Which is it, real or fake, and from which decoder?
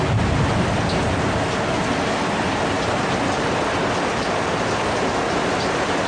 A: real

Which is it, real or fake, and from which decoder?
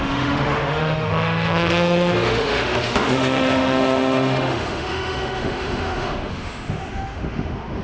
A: fake, autoencoder, DAC-VAE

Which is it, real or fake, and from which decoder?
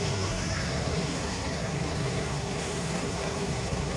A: fake, codec, SNAC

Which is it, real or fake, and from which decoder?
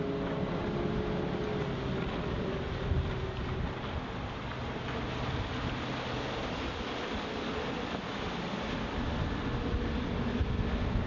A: real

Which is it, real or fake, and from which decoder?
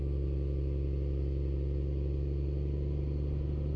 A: real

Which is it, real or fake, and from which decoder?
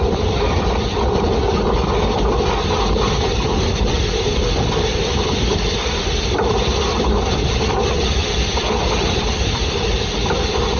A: fake, vocoder, BigVGAN v2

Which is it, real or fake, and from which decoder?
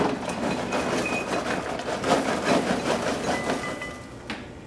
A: real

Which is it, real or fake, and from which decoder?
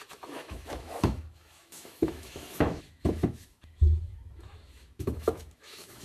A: fake, autoencoder, DAC-VAE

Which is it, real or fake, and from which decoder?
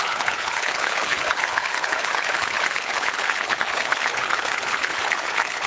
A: fake, codec, HILCodec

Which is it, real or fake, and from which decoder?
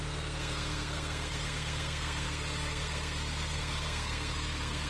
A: fake, codec, SNAC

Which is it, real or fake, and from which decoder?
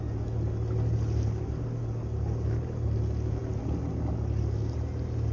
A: real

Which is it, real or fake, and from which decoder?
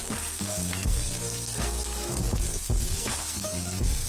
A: fake, codec, SNAC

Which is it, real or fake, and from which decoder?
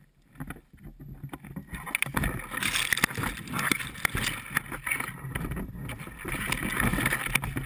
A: real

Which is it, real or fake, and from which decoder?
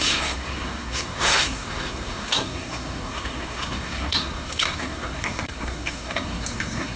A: fake, codec, SNAC